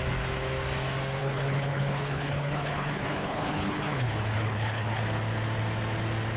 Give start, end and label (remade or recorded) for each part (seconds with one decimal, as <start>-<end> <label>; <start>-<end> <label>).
0.0-1.2 recorded; 1.2-5.0 remade; 5.0-6.4 recorded